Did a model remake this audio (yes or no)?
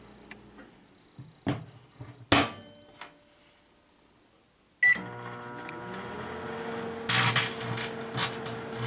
no